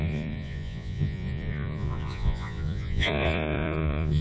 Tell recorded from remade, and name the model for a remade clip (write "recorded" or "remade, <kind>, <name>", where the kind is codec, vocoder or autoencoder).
remade, vocoder, Vocos